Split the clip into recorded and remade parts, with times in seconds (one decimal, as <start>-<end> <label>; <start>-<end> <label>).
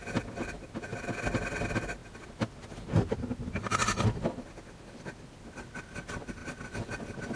0.0-7.4 recorded